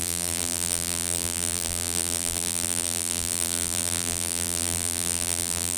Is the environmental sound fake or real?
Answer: fake